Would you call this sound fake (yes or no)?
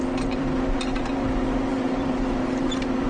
yes